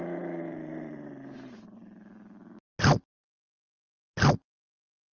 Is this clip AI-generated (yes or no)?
no